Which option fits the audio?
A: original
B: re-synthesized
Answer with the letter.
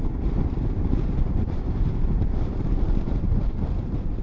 B